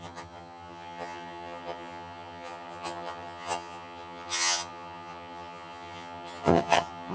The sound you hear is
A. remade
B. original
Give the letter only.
A